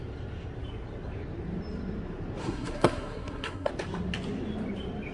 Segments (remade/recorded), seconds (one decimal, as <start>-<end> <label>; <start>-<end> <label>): 0.0-2.4 recorded; 2.4-3.7 remade; 3.7-5.1 recorded

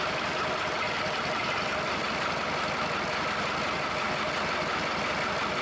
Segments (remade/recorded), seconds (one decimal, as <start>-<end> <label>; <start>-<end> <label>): 0.0-5.6 recorded

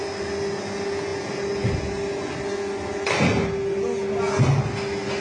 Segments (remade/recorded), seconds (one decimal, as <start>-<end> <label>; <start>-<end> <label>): 0.0-5.2 recorded

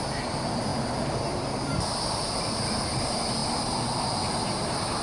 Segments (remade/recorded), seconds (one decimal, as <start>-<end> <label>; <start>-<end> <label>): 0.0-5.0 recorded